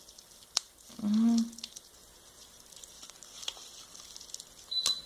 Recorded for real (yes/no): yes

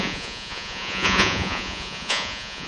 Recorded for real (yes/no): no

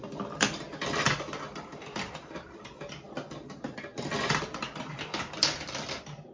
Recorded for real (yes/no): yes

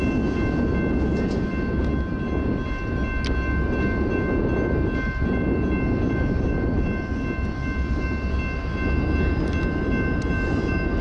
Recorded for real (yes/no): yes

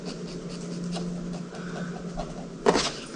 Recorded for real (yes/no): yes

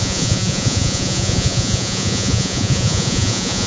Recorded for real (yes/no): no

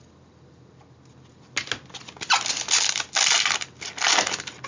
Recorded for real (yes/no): yes